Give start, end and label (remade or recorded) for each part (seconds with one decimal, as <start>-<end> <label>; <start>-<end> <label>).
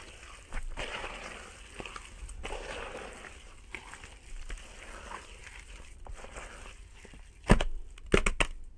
0.0-8.8 recorded